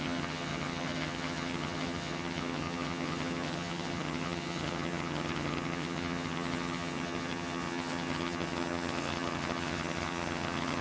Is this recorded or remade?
remade